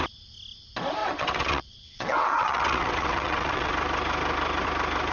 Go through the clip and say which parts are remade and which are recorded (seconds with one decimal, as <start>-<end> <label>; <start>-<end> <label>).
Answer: 0.0-1.0 recorded; 1.0-3.7 remade; 3.7-5.1 recorded

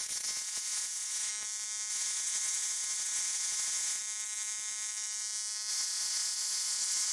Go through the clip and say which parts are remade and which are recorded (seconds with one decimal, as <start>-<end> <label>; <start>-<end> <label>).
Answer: 0.0-1.3 remade; 1.3-1.9 recorded; 1.9-4.0 remade; 4.0-5.7 recorded; 5.7-7.1 remade

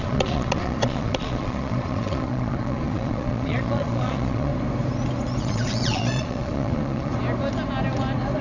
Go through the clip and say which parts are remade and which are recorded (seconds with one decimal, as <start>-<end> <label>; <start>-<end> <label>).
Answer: 0.0-4.5 remade; 4.5-5.4 recorded; 5.4-7.1 remade; 7.1-8.4 recorded

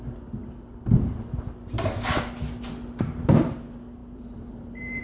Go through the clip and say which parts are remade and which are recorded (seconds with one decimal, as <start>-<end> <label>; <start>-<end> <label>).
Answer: 0.0-4.0 recorded; 4.0-5.0 remade

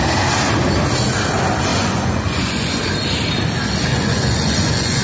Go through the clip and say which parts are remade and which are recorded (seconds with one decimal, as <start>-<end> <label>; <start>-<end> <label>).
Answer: 0.0-1.7 recorded; 1.7-2.7 remade; 2.7-3.9 recorded; 3.9-5.0 remade